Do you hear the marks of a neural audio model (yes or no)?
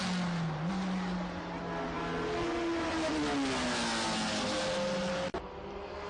no